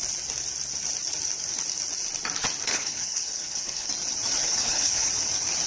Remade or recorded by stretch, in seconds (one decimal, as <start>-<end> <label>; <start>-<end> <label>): 0.0-2.7 recorded; 2.7-3.9 remade; 3.9-4.5 recorded; 4.5-5.1 remade; 5.1-5.7 recorded